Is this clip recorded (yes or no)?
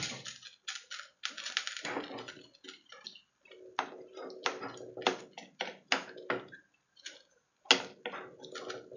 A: yes